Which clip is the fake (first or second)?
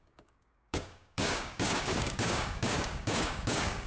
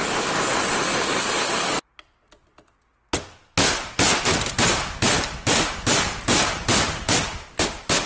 first